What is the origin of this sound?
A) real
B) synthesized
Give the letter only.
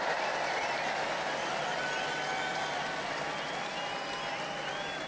A